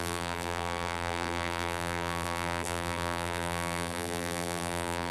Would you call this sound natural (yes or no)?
no